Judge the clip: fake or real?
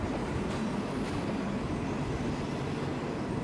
real